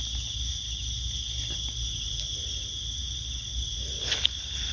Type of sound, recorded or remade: recorded